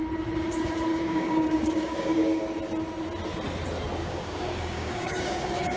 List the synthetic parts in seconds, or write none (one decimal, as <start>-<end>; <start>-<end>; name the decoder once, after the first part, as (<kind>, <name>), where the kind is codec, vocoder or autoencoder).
0.9-2.4 (codec, DAC); 4.0-5.8